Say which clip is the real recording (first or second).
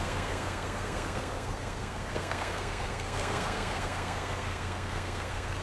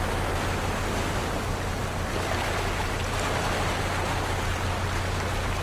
second